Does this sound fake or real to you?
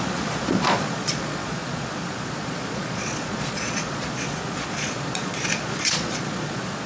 fake